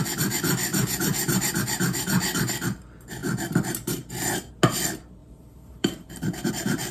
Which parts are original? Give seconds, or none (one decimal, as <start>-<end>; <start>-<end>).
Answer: 0.0-0.7; 1.5-5.2; 6.5-6.9